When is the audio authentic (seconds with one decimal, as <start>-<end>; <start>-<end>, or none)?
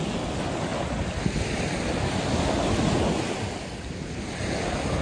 0.0-5.0